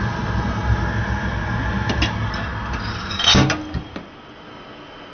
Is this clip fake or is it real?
real